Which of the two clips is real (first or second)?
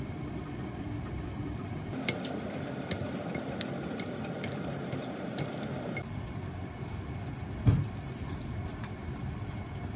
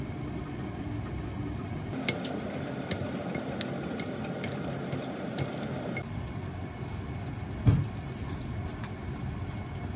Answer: second